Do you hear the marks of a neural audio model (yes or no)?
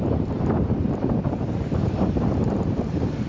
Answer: yes